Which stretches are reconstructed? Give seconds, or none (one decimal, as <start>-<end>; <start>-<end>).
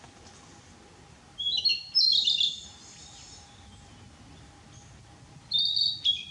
none